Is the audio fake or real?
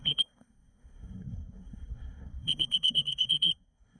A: fake